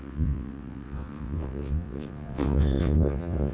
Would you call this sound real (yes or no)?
no